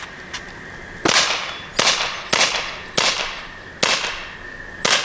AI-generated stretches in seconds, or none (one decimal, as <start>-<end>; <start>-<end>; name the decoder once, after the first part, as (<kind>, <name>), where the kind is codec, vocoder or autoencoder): none